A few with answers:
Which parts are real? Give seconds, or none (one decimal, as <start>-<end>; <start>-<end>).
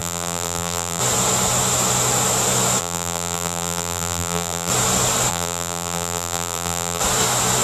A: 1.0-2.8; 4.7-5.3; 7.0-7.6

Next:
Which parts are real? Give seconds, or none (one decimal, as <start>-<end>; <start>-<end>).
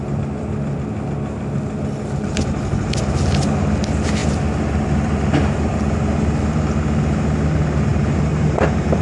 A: 0.0-7.9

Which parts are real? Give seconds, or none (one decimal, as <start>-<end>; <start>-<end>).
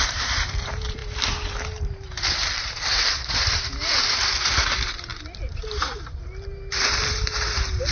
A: none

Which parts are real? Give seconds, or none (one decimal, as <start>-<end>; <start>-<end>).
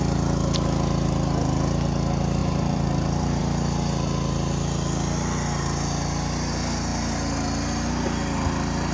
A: 0.0-2.4; 3.4-8.9